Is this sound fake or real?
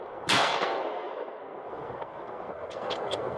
fake